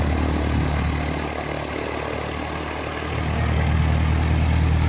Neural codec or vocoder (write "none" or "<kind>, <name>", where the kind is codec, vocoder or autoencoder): none